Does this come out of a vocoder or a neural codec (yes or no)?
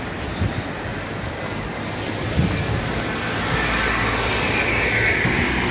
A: no